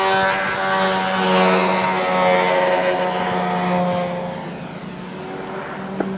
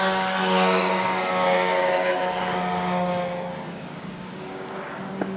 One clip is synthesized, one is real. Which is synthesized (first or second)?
second